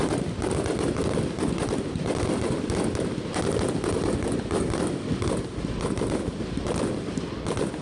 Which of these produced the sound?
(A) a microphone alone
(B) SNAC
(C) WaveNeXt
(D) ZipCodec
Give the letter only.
A